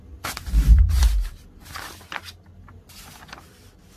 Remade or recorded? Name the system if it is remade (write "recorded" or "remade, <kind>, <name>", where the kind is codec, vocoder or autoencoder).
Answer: recorded